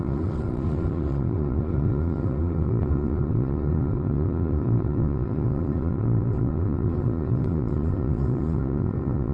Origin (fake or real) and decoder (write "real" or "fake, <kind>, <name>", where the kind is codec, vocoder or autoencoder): fake, vocoder, Vocos